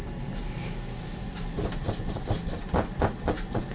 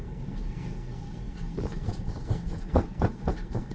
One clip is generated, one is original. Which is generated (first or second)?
second